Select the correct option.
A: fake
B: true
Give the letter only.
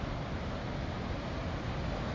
B